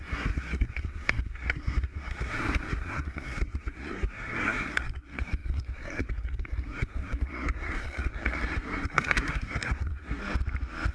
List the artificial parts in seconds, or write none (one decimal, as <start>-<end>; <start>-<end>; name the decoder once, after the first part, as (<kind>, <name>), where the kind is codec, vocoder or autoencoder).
0.0-10.2 (codec, SNAC)